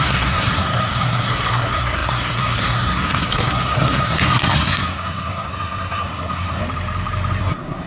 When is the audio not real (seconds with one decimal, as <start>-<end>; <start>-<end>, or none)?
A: 0.0-6.6; 7.4-7.9